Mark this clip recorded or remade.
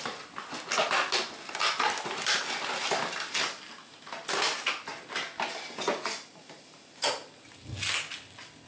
recorded